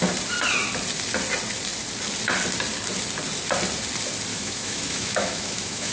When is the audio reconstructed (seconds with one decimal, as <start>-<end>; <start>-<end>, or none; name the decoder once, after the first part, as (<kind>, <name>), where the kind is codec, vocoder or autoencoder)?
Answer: 4.3-5.9 (autoencoder, DAC-VAE)

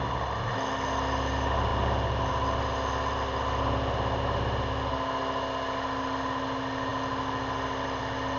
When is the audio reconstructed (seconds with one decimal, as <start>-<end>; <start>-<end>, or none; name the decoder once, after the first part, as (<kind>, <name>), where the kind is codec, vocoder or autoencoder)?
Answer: none

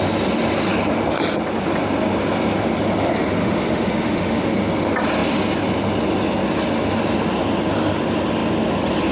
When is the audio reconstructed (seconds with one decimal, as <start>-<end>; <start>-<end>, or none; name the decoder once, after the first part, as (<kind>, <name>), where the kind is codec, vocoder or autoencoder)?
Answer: 3.4-4.4 (autoencoder, DAC-VAE)

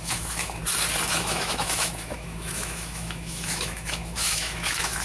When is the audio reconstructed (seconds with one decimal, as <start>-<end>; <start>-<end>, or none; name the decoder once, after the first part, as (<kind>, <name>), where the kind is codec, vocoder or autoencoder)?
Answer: 0.0-0.6 (autoencoder, DAC-VAE); 1.1-5.0

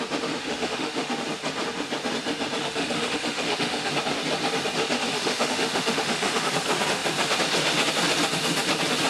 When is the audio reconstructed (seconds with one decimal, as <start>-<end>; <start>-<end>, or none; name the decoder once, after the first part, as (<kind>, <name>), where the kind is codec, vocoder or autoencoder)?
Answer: 0.4-1.1 (autoencoder, DAC-VAE); 2.6-3.9; 5.1-6.5

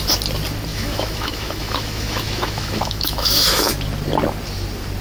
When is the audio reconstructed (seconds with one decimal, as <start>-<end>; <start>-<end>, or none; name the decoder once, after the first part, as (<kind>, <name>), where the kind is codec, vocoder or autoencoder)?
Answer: 0.7-3.7 (autoencoder, DAC-VAE)

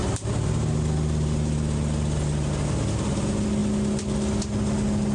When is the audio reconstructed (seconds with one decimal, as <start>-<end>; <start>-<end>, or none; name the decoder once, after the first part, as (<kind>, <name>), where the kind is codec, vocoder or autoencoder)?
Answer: none